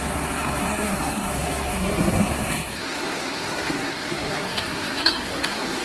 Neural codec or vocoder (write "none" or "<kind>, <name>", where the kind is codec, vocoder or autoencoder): codec, SNAC